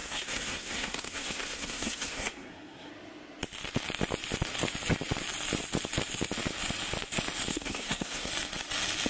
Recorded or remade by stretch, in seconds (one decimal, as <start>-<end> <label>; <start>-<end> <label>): 0.0-2.9 remade; 2.9-7.5 recorded; 7.5-8.3 remade; 8.3-9.1 recorded